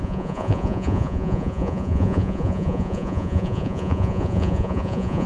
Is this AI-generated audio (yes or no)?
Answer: yes